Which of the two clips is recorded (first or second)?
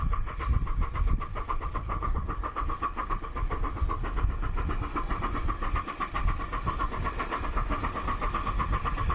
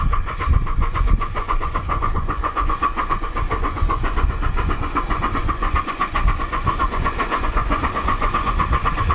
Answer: first